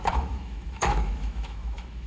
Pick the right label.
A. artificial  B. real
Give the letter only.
A